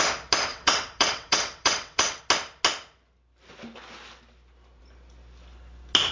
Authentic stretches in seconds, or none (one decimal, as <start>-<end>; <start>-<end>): 0.0-0.5; 2.2-6.1

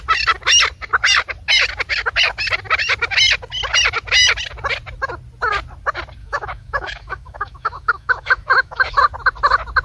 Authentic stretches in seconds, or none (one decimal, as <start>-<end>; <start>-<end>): 0.0-6.2; 9.0-9.8